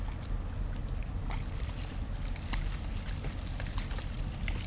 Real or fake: real